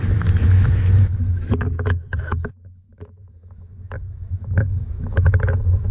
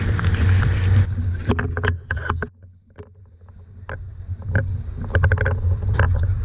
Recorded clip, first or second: second